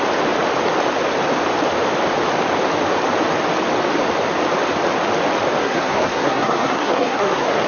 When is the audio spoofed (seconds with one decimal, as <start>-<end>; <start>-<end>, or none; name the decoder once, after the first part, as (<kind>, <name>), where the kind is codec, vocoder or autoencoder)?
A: 5.6-7.7 (codec, SNAC)